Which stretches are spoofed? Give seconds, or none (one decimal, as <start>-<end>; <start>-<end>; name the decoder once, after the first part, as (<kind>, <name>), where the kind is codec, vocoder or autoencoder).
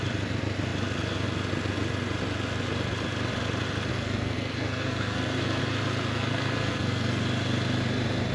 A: 3.9-5.6 (codec, SNAC); 6.1-7.2